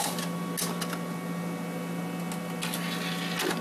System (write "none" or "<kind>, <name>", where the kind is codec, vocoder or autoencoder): none